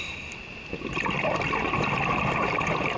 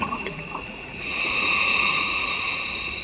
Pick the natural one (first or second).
first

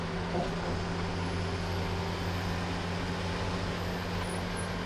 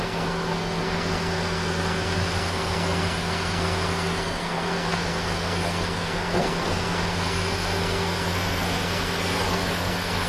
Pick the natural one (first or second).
first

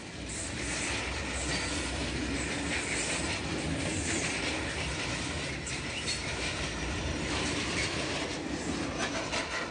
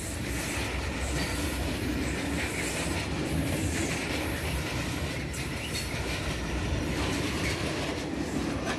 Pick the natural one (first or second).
first